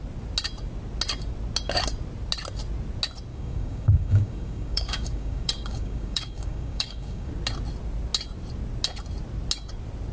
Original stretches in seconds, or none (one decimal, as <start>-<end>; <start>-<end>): 0.0-3.3; 7.3-10.1